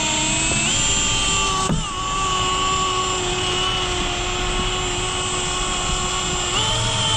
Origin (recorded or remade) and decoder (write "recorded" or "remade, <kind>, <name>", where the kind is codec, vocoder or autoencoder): recorded